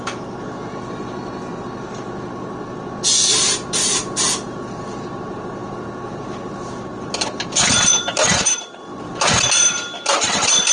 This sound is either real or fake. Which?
real